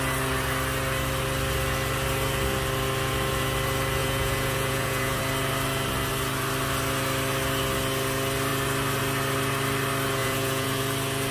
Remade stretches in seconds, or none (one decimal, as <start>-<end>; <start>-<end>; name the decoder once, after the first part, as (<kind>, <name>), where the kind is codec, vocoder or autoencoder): 4.0-5.2 (vocoder, Vocos); 10.2-10.8